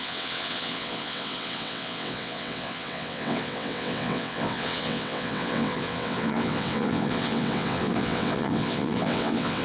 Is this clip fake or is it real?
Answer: fake